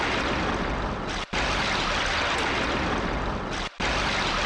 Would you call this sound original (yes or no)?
yes